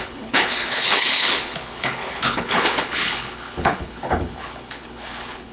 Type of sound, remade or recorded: remade